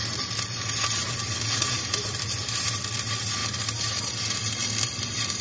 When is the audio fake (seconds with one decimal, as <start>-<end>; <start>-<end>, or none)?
none